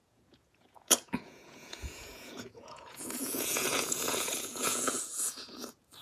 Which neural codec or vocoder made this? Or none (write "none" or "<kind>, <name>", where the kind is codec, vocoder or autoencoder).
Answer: vocoder, Vocos